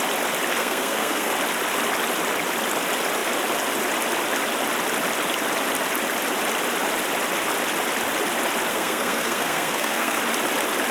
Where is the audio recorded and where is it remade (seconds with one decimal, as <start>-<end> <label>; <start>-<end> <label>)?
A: 0.0-0.6 recorded; 0.6-1.3 remade; 1.3-8.7 recorded; 8.7-10.2 remade; 10.2-10.9 recorded